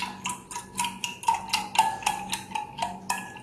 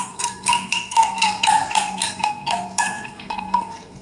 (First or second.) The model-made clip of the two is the second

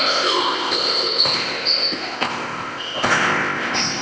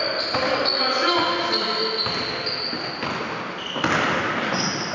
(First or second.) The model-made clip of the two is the first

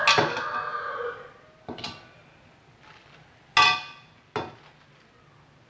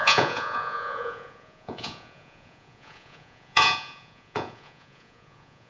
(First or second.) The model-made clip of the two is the second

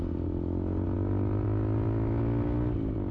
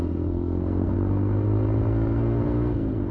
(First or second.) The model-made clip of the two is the second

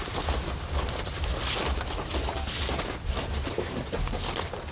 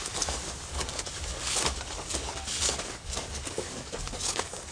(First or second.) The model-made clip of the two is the second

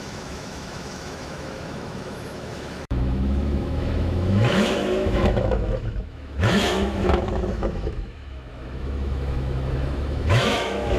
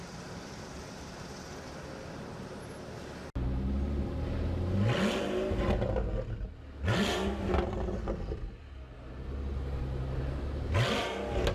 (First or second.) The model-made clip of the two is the first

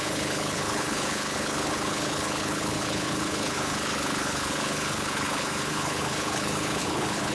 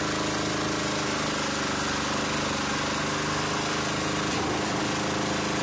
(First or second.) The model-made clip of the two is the first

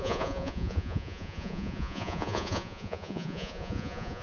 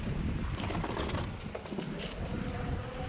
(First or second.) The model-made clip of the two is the first